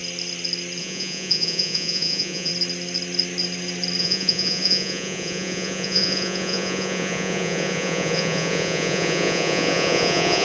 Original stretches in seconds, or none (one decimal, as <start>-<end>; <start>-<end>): 0.0-0.8; 2.5-4.0